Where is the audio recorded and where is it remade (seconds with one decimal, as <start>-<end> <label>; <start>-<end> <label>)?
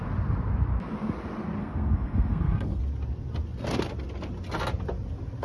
0.0-1.6 recorded; 1.6-2.8 remade; 2.8-5.4 recorded